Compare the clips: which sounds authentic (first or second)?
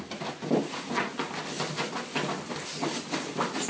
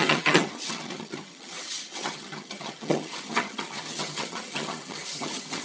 first